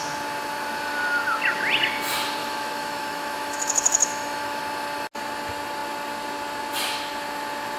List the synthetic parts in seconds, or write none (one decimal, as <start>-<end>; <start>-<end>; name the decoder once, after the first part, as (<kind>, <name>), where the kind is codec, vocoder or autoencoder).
2.4-4.6 (autoencoder, DAC-VAE)